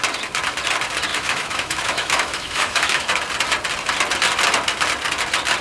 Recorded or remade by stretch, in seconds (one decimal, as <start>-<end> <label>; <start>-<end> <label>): 0.0-1.1 recorded; 1.1-3.1 remade; 3.1-5.6 recorded